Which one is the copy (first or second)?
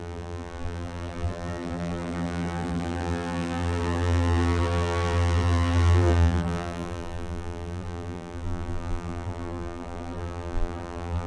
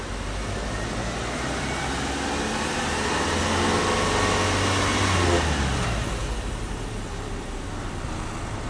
first